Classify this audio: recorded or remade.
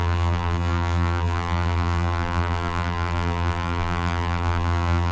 remade